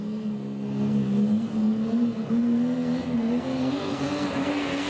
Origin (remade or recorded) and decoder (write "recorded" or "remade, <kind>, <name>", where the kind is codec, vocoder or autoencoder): remade, codec, SNAC